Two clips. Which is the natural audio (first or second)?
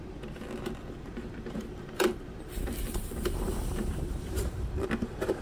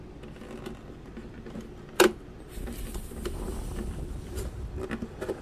second